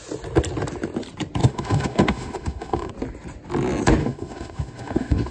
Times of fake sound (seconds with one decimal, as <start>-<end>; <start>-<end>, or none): 1.4-2.9; 4.0-5.3